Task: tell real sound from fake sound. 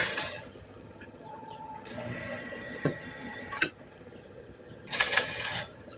fake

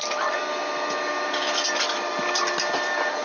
real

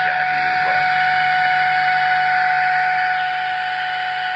real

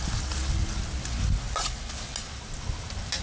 real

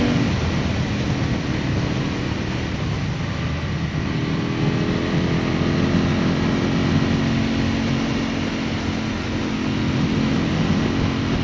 real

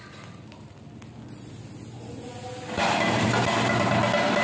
real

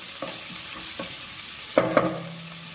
real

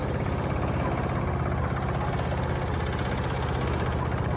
real